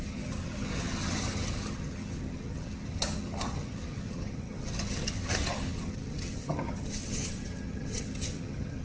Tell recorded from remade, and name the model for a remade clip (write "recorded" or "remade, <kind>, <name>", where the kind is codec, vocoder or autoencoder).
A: remade, vocoder, HiFi-GAN